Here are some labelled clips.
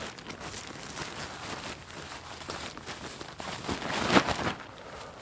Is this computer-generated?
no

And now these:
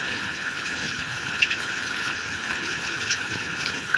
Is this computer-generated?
yes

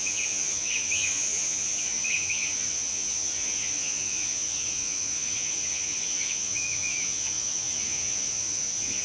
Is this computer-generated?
yes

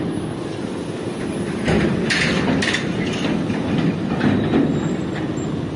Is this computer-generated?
no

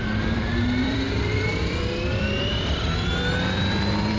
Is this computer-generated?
yes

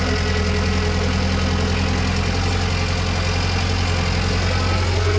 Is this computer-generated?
no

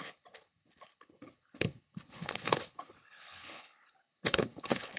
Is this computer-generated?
yes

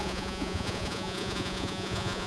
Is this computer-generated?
yes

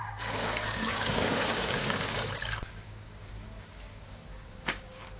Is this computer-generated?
yes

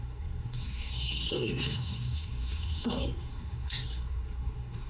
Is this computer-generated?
yes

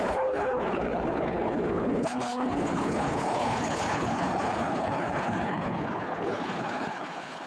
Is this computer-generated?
yes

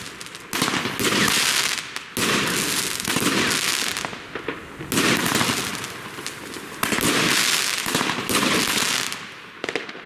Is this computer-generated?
no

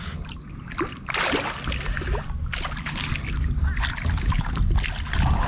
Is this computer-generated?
no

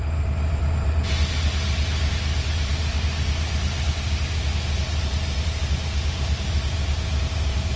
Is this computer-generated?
no